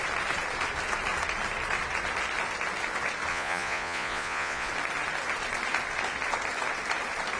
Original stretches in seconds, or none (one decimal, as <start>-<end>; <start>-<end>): 0.0-3.3; 4.7-7.4